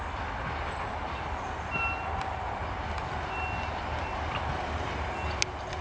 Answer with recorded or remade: recorded